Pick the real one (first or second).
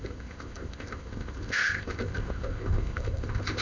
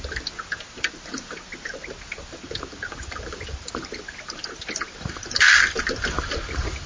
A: second